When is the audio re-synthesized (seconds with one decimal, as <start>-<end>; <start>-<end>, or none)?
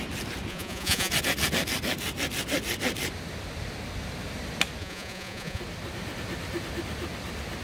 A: 0.5-1.1; 4.8-5.6